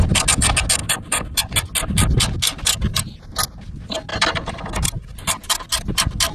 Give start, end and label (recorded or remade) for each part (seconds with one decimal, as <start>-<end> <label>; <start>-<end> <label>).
0.0-0.8 recorded; 0.8-1.5 remade; 1.5-4.1 recorded; 4.1-4.6 remade; 4.6-6.3 recorded